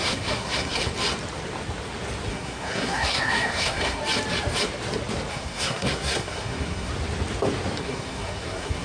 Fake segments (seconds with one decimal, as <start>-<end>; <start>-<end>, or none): 0.0-0.8; 2.3-4.0; 5.3-6.9; 7.8-8.8